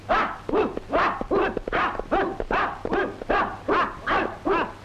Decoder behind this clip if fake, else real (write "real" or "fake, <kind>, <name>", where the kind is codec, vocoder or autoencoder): real